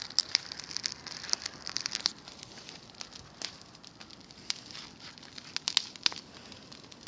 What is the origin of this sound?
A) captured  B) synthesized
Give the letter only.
A